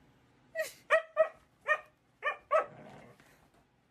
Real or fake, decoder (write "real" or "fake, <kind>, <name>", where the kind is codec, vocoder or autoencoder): real